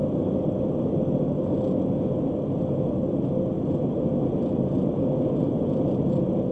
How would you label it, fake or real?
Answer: real